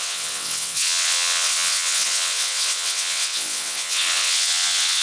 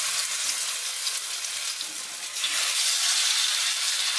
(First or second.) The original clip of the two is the second